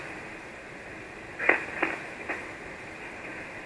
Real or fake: real